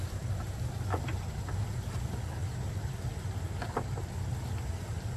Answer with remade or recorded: recorded